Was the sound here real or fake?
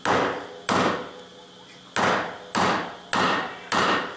real